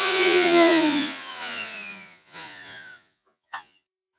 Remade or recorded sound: remade